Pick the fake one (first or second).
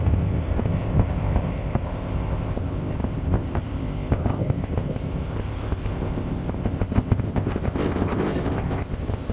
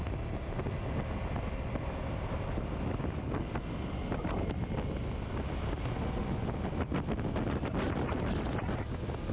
first